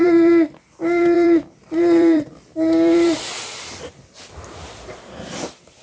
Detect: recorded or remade remade